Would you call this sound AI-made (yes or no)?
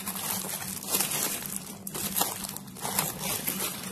no